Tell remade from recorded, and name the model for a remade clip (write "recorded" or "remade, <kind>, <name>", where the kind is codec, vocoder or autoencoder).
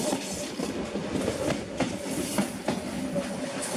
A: recorded